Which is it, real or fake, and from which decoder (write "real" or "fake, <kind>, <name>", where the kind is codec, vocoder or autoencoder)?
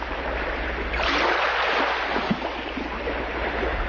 real